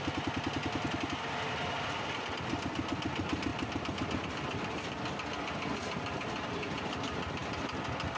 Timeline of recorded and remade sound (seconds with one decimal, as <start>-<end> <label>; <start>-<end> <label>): 0.0-8.2 recorded